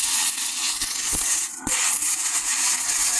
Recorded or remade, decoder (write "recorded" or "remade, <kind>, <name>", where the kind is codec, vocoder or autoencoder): remade, vocoder, WaveNeXt